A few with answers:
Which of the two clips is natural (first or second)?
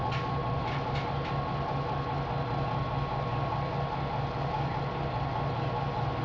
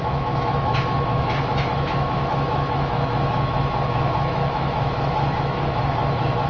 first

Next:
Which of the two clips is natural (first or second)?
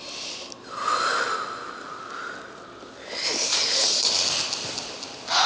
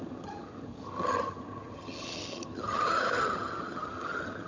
first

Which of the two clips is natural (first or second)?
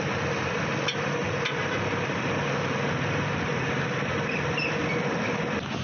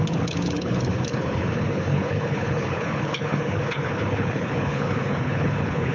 first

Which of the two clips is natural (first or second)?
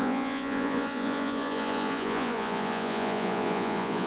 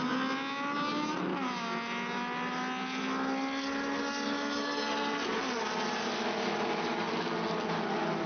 second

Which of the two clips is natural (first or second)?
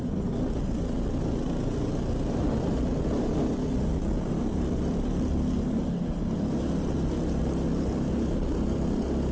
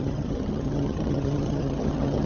first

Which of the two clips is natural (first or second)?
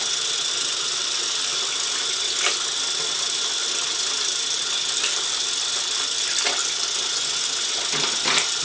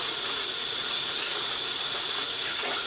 first